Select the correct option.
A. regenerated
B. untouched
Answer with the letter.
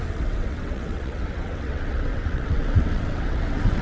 A